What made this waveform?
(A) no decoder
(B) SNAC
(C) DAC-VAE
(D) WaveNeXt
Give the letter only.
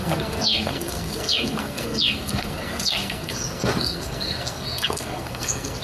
B